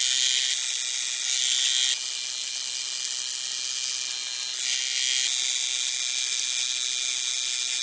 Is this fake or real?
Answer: real